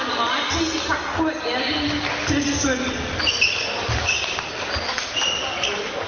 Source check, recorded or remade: recorded